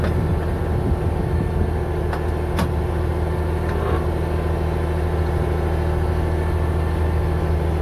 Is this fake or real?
real